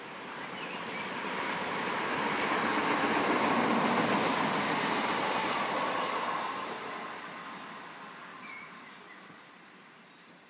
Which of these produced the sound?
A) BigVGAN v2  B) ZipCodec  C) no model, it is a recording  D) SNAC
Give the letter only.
C